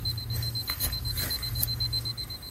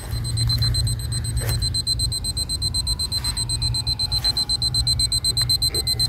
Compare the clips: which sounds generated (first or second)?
first